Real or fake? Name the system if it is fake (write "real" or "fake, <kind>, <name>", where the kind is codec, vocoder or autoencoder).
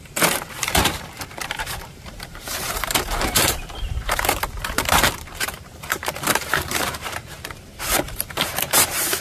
fake, vocoder, BigVGAN v2